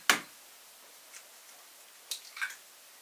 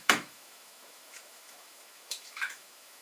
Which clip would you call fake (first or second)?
second